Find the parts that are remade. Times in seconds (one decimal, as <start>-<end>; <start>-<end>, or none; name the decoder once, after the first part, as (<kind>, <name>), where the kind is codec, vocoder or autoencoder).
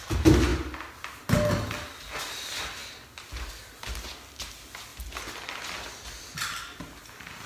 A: none